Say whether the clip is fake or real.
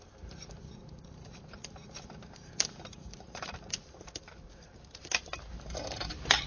fake